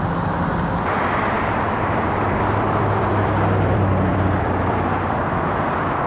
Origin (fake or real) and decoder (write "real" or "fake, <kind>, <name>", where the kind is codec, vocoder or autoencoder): fake, vocoder, BigVGAN v2